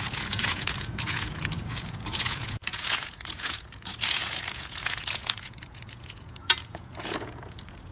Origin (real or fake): fake